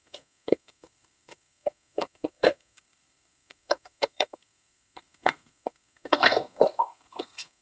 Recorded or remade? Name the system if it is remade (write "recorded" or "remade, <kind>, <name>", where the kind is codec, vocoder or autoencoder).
remade, codec, SNAC